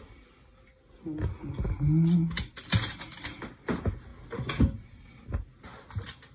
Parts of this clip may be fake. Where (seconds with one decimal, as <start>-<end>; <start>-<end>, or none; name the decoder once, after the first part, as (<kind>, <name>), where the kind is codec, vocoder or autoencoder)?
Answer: none